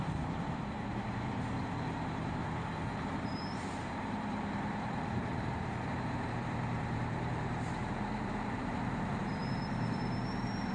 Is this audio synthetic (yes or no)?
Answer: yes